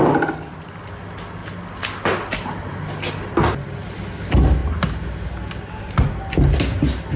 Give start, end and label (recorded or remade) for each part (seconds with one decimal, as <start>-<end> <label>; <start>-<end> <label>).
0.0-7.2 recorded